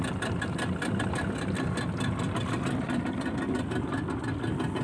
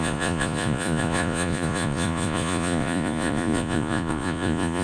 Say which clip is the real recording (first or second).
first